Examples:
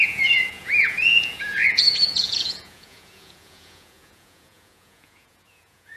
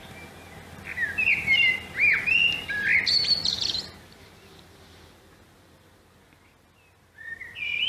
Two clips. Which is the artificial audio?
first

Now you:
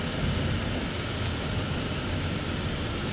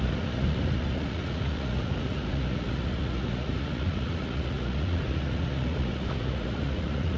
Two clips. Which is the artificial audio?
second